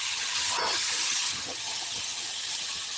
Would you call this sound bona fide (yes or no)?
no